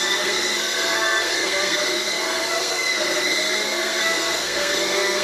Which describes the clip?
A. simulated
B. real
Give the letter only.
A